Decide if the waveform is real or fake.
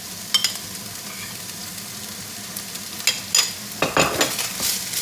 real